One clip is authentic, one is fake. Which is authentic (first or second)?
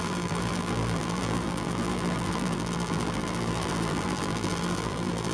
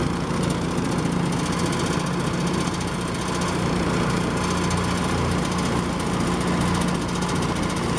second